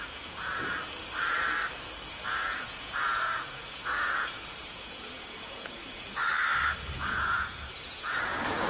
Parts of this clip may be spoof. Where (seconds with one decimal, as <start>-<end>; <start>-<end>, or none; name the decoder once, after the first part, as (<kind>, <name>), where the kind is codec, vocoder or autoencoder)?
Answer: 0.0-0.8 (vocoder, Vocos); 2.1-6.3; 6.9-8.7